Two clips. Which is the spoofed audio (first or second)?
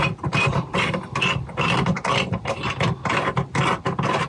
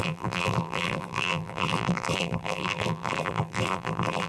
second